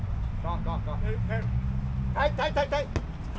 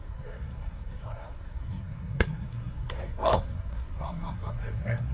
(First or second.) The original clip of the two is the first